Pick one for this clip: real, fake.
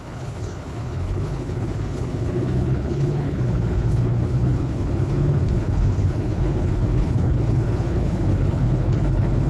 fake